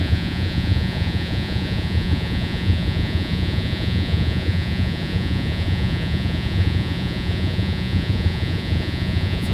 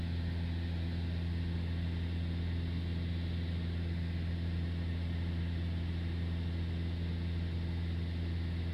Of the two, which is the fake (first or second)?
first